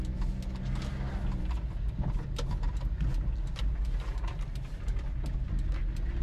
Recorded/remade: recorded